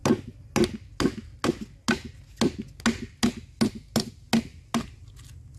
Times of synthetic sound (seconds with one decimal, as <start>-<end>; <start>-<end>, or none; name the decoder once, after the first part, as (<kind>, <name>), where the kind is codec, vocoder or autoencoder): none